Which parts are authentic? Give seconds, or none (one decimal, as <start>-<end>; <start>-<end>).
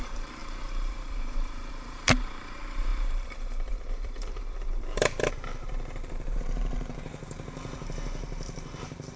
none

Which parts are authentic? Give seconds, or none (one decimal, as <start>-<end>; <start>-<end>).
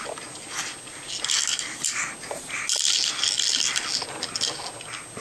0.0-5.2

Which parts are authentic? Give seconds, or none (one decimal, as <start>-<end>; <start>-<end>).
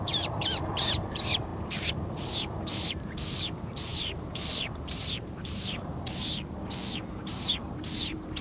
5.9-7.2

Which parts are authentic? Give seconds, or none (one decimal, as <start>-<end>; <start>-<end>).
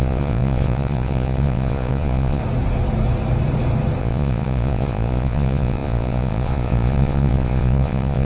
2.4-4.0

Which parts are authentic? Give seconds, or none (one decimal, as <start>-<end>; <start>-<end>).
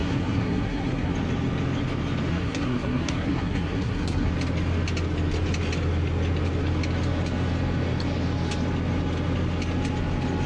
1.1-2.3; 4.3-10.5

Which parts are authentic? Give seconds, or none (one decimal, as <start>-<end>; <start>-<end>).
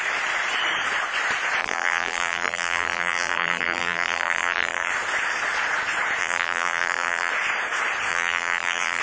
0.0-1.6; 4.9-6.2; 7.3-8.1